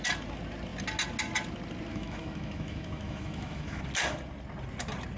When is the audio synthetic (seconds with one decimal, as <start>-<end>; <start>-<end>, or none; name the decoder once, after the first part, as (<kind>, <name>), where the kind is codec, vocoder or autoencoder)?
1.9-3.8 (autoencoder, DAC-VAE)